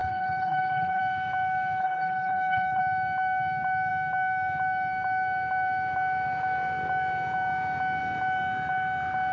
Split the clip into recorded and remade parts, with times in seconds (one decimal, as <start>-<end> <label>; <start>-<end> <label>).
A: 0.0-1.0 remade; 1.0-1.8 recorded; 1.8-2.8 remade; 2.8-9.3 recorded